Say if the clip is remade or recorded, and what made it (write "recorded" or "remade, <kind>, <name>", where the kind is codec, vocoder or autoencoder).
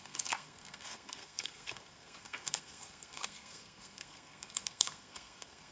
remade, codec, SNAC